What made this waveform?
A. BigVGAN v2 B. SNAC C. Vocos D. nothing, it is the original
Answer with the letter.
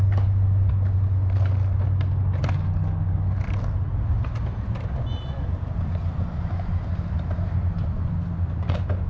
D